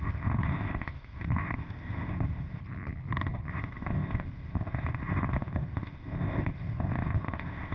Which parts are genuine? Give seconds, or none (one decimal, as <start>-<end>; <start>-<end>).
2.6-3.5